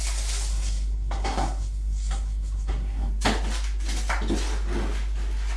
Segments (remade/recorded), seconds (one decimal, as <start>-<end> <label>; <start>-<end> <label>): 0.0-0.5 recorded; 0.5-3.1 remade; 3.1-5.6 recorded